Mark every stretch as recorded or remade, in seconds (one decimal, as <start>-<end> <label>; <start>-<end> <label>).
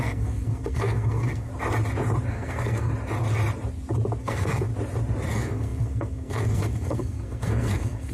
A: 0.0-1.5 remade; 1.5-2.3 recorded; 2.3-2.9 remade; 2.9-4.2 recorded; 4.2-4.7 remade; 4.7-5.3 recorded; 5.3-8.1 remade